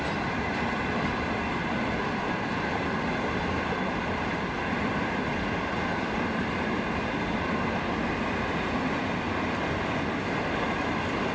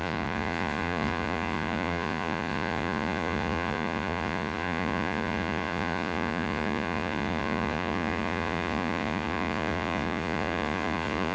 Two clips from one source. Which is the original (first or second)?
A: first